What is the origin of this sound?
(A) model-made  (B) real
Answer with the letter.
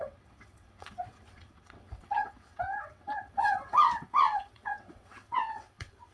A